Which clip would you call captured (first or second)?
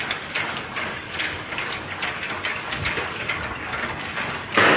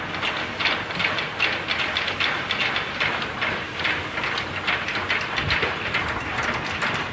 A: second